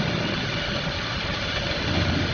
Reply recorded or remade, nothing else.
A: recorded